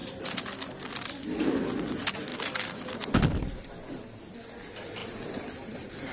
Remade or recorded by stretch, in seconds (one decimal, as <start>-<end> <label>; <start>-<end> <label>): 0.0-1.1 remade; 1.1-2.3 recorded; 2.3-3.9 remade; 3.9-5.0 recorded; 5.0-6.1 remade